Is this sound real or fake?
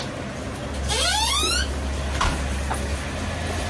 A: real